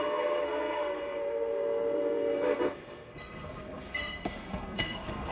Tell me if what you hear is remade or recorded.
remade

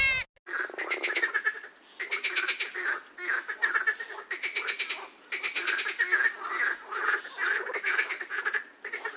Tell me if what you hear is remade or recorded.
recorded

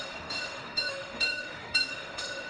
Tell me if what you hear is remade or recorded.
remade